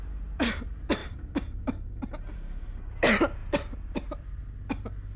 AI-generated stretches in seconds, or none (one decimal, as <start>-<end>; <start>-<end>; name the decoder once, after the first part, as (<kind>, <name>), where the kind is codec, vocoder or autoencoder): 1.0-2.1 (vocoder, BigVGAN v2)